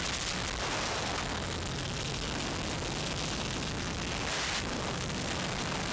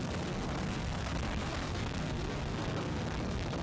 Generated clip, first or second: second